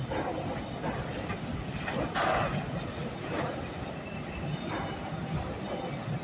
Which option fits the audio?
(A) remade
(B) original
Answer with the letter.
B